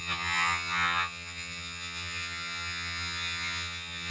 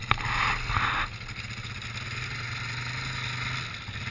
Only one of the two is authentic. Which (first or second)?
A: second